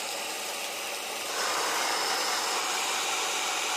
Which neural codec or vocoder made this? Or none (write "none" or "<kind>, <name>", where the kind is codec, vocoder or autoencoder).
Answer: none